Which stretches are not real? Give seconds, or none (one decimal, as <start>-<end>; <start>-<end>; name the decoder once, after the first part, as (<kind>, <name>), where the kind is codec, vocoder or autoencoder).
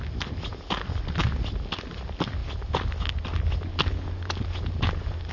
none